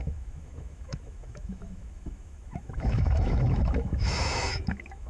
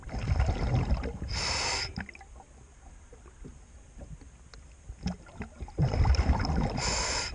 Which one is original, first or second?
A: second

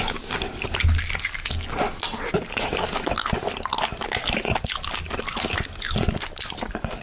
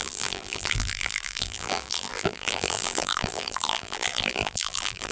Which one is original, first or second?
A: first